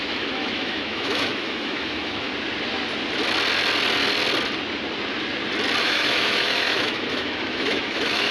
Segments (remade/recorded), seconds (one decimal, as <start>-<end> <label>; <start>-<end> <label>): 0.0-2.3 remade; 2.3-5.8 recorded; 5.8-8.3 remade